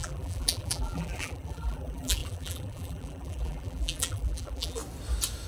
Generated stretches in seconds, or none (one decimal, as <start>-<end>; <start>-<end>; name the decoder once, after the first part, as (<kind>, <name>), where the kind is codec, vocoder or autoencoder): 0.0-4.8 (vocoder, BigVGAN v2)